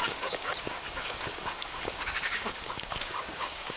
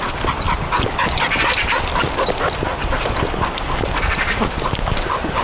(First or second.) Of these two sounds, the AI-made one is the first